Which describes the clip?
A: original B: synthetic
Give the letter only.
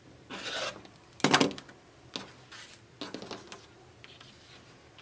A